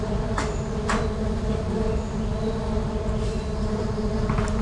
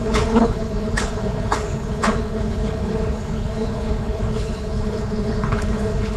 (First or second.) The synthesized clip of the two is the second